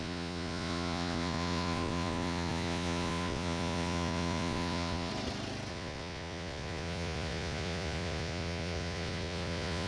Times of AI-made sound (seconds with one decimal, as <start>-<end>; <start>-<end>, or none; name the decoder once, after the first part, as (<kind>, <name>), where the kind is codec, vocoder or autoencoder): 0.0-5.1 (vocoder, Vocos); 5.7-9.9